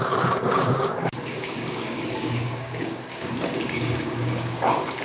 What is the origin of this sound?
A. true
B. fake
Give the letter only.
B